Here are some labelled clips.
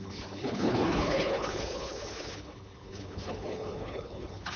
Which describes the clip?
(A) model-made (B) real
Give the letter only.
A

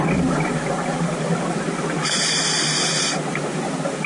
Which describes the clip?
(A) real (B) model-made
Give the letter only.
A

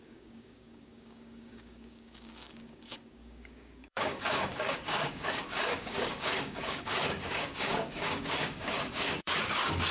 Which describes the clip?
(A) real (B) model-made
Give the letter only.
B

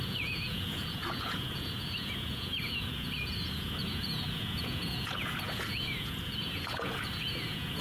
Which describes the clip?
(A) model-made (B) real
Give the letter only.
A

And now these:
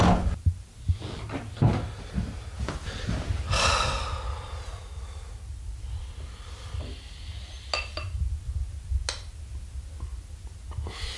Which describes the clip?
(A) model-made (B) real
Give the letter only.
B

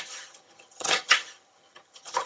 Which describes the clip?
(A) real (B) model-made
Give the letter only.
B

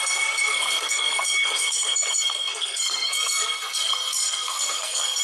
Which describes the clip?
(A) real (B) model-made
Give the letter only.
B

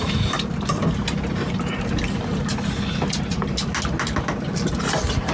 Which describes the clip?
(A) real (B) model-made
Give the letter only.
A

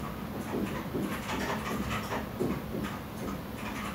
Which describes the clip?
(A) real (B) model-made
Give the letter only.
A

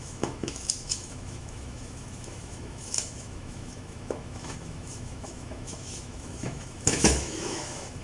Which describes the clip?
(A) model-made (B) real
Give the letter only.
A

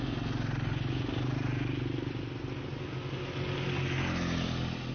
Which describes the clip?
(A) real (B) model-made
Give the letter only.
A